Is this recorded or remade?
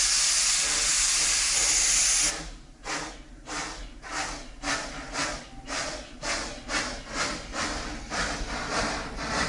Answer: recorded